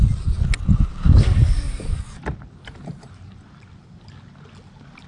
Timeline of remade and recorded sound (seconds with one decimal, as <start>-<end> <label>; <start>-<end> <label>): 0.0-0.9 recorded; 0.9-2.2 remade; 2.2-5.1 recorded